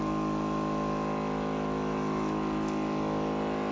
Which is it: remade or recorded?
recorded